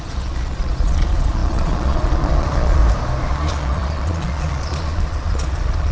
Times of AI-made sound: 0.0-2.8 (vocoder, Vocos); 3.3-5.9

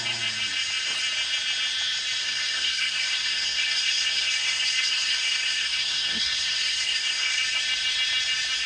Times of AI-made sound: 2.2-7.4 (codec, SNAC)

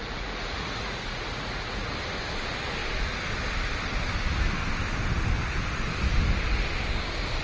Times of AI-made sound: 0.0-1.9 (vocoder, Vocos)

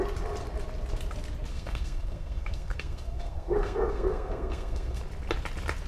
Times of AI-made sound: 1.5-5.0 (codec, SNAC)

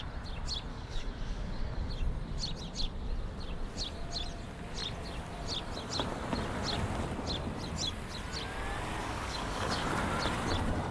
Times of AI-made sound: 0.7-1.9 (codec, DAC); 9.0-9.9